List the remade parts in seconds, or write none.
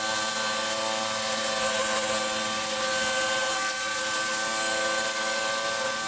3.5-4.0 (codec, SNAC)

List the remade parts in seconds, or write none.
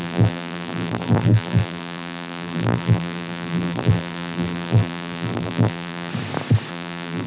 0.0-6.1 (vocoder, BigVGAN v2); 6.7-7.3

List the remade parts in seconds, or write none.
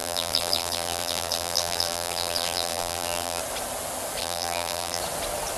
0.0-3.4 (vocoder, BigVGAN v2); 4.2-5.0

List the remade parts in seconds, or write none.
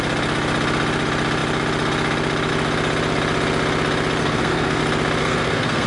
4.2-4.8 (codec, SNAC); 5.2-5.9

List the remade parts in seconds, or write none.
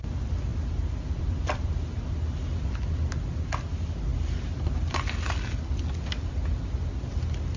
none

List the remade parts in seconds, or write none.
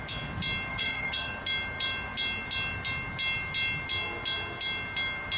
0.7-1.3 (vocoder, HiFi-GAN)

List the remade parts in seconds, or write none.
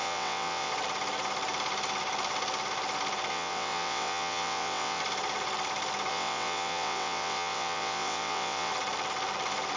0.0-0.7 (vocoder, WaveNeXt); 3.3-5.0; 6.1-8.7